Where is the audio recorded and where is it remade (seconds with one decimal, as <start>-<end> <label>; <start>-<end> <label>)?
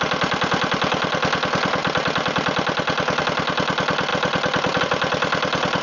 0.0-5.8 recorded